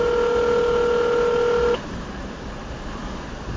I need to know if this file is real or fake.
real